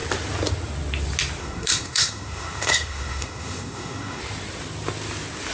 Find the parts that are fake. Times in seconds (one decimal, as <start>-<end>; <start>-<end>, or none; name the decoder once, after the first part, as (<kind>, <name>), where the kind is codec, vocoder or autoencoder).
1.4-4.2 (codec, SNAC)

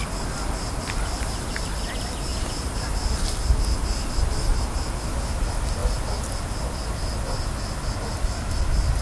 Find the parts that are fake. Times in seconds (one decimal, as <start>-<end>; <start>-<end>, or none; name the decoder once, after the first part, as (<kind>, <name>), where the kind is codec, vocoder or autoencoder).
2.3-3.3 (vocoder, BigVGAN v2)